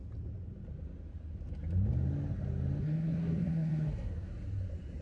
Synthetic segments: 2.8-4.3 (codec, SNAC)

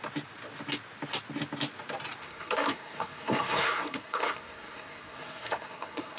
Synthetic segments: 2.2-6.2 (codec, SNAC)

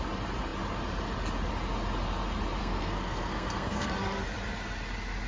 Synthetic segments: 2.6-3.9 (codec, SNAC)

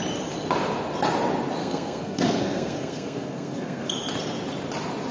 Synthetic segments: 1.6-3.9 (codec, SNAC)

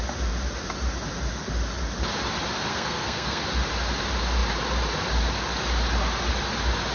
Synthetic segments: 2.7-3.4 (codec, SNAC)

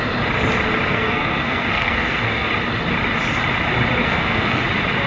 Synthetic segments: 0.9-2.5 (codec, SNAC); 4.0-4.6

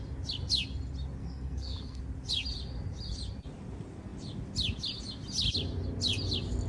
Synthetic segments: 1.2-2.0 (codec, SNAC)